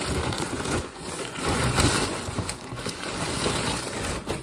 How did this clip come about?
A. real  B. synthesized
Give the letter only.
B